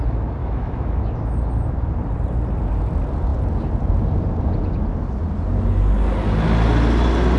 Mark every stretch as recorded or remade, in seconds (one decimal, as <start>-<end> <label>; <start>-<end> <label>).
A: 0.0-0.4 recorded; 0.4-1.0 remade; 1.0-7.4 recorded